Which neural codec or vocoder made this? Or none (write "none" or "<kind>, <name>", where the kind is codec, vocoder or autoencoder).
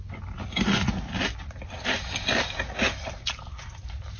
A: none